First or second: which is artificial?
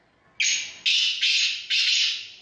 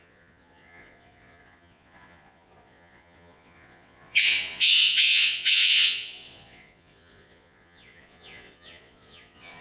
second